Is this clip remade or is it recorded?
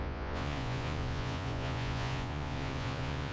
remade